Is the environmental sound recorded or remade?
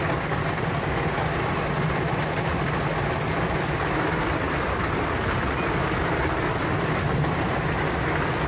recorded